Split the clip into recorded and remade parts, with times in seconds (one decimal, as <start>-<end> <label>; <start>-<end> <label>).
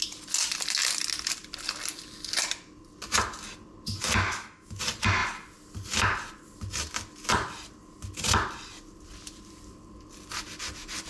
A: 0.0-4.2 recorded; 4.2-4.8 remade; 4.8-11.1 recorded